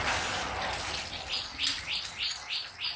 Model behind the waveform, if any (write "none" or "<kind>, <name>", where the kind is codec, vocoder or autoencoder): none